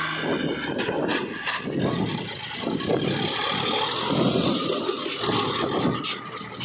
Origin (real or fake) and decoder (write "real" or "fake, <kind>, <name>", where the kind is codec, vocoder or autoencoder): real